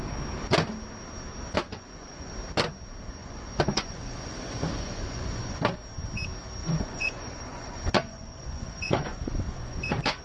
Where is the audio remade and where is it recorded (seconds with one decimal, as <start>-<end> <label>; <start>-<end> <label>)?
0.0-1.7 recorded; 1.7-2.3 remade; 2.3-3.2 recorded; 3.2-5.6 remade; 5.6-6.6 recorded; 6.6-10.2 remade

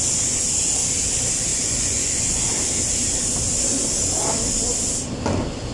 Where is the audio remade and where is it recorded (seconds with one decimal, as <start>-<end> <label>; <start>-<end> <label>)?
0.0-1.5 recorded; 1.5-2.5 remade; 2.5-5.7 recorded

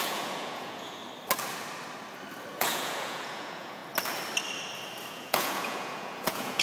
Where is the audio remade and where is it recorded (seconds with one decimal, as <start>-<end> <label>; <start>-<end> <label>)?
0.0-1.0 remade; 1.0-2.5 recorded; 2.5-3.8 remade; 3.8-5.1 recorded; 5.1-6.6 remade

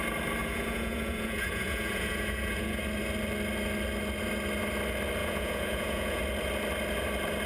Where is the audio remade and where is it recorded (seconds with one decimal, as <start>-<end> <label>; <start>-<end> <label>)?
0.0-0.4 recorded; 0.4-2.8 remade; 2.8-5.2 recorded; 5.2-6.2 remade; 6.2-7.5 recorded

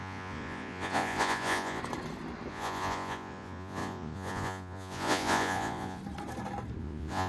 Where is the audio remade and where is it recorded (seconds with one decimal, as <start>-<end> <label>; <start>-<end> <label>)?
0.0-1.8 remade; 1.8-2.5 recorded; 2.5-6.0 remade; 6.0-6.8 recorded; 6.8-7.3 remade

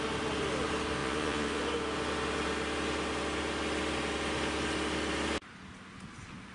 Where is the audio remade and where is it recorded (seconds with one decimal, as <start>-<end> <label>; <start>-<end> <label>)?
0.0-1.0 recorded; 1.0-1.6 remade; 1.6-6.5 recorded

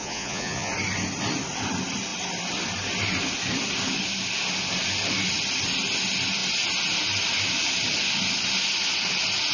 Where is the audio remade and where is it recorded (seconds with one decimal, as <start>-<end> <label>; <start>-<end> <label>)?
0.0-0.7 remade; 0.7-9.5 recorded